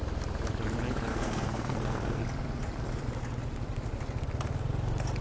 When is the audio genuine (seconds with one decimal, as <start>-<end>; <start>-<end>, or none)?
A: 0.0-1.1; 2.2-5.2